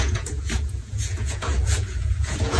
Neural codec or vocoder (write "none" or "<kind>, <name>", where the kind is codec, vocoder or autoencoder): vocoder, Vocos